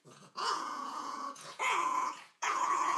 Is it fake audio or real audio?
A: fake